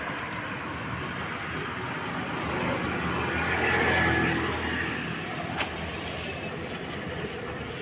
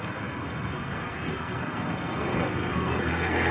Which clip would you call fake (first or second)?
second